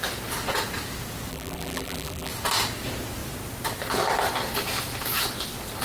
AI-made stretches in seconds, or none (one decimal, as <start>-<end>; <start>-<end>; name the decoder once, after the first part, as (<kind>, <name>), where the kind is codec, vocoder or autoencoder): 1.3-2.3 (vocoder, BigVGAN v2)